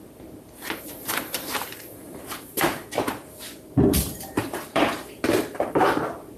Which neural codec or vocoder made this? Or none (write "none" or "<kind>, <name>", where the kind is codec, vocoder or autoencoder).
vocoder, BigVGAN v2